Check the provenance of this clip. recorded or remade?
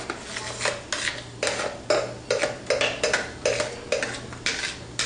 recorded